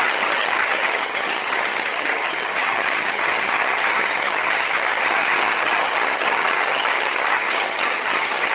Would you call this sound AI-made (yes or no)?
yes